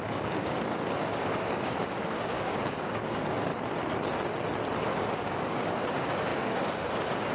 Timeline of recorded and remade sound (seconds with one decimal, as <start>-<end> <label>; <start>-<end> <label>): 0.0-3.5 remade; 3.5-4.8 recorded; 4.8-7.3 remade